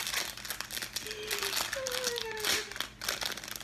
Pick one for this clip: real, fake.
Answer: real